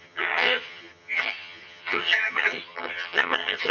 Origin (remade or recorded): remade